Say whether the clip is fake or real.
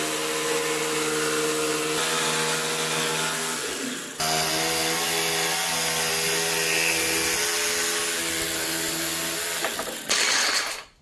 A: real